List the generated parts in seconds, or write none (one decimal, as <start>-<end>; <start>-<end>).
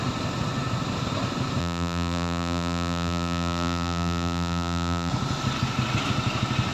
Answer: 1.6-5.1